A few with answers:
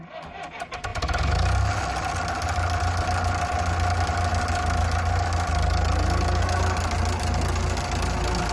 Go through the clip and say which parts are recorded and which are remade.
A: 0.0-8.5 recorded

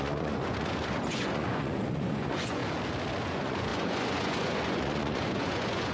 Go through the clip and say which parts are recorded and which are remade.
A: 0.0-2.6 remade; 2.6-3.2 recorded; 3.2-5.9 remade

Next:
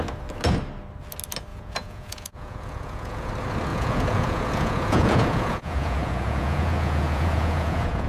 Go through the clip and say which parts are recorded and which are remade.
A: 0.0-1.5 recorded; 1.5-3.3 remade; 3.3-3.7 recorded; 3.7-8.1 remade

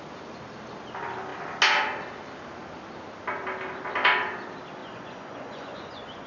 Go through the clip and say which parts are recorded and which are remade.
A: 0.0-4.8 recorded; 4.8-6.3 remade

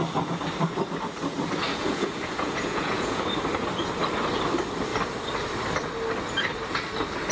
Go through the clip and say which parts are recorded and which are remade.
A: 0.0-1.7 recorded; 1.7-3.2 remade; 3.2-7.3 recorded

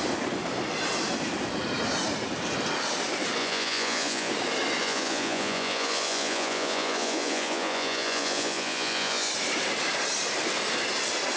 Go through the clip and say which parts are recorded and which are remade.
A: 0.0-3.4 recorded; 3.4-4.3 remade; 4.3-4.8 recorded; 4.8-9.3 remade; 9.3-11.4 recorded